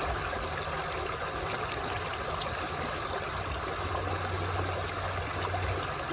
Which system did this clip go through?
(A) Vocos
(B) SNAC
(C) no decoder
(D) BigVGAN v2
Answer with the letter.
C